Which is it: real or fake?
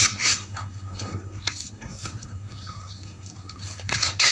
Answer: fake